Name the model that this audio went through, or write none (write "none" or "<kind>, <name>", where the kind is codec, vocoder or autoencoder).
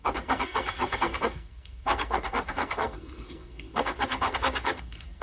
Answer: codec, SNAC